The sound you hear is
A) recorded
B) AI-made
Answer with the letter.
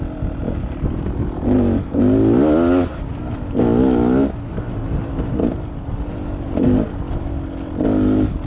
A